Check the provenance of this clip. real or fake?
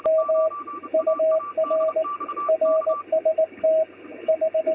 real